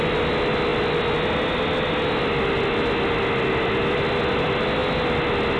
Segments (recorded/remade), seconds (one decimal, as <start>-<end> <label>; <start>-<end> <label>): 0.0-5.6 recorded